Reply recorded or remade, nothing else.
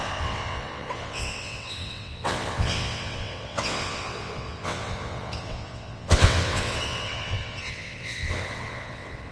remade